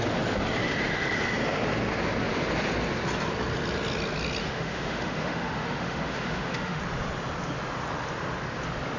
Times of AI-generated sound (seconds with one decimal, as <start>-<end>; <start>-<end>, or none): 4.4-6.8